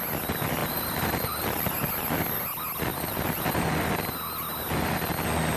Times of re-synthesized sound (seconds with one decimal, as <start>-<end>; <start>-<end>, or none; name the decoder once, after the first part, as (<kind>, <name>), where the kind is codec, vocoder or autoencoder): 0.6-1.9 (vocoder, BigVGAN v2); 2.9-3.9